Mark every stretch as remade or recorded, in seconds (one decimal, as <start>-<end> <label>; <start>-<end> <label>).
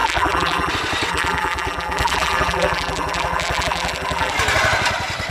0.0-0.7 remade; 0.7-1.1 recorded; 1.1-4.3 remade; 4.3-5.3 recorded